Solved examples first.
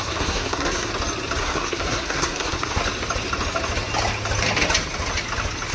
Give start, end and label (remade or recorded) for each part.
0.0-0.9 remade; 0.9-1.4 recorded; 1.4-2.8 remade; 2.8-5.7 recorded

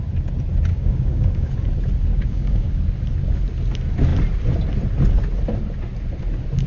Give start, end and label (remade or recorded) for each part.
0.0-0.7 recorded; 0.7-1.5 remade; 1.5-2.1 recorded; 2.1-2.8 remade; 2.8-6.7 recorded

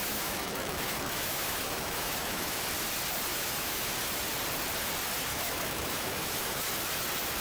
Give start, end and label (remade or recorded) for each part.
0.0-2.6 remade; 2.6-3.3 recorded; 3.3-3.9 remade; 3.9-5.3 recorded; 5.3-6.6 remade; 6.6-7.4 recorded

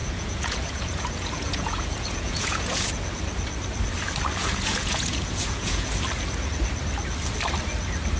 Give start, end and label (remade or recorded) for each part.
0.0-2.9 remade; 2.9-4.4 recorded; 4.4-5.9 remade; 5.9-8.2 recorded

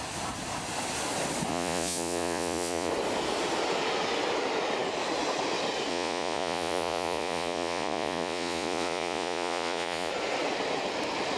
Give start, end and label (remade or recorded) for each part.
0.0-1.5 recorded; 1.5-2.9 remade; 2.9-5.9 recorded; 5.9-10.1 remade; 10.1-11.4 recorded

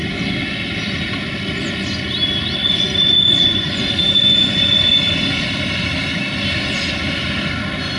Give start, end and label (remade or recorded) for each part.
0.0-2.6 recorded; 2.6-5.0 remade; 5.0-8.0 recorded

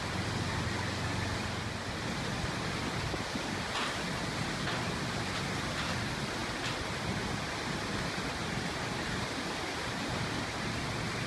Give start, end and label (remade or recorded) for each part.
0.0-11.3 recorded